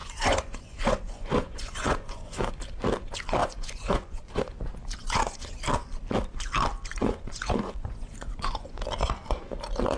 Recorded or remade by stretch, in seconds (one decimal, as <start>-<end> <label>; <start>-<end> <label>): 0.0-2.5 remade; 2.5-3.4 recorded; 3.4-4.4 remade; 4.4-5.0 recorded; 5.0-5.6 remade; 5.6-7.0 recorded; 7.0-8.8 remade; 8.8-10.0 recorded